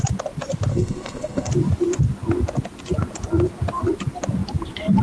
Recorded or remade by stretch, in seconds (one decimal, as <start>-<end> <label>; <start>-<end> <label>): 0.0-0.7 recorded; 0.7-1.5 remade; 1.5-5.0 recorded